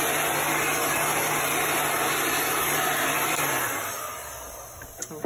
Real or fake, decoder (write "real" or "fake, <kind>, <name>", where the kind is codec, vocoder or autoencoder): real